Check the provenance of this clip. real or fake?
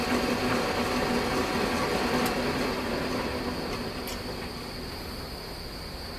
real